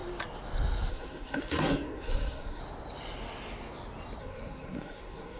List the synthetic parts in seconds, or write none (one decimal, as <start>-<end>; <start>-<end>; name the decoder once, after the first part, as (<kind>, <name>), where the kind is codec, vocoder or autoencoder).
0.9-2.6 (codec, SNAC); 4.2-5.4